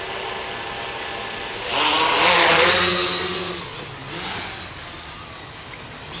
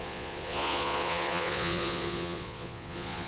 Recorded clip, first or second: first